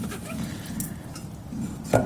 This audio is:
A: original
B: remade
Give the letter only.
A